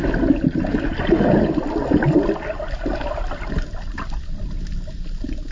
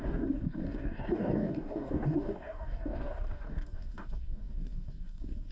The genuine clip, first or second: first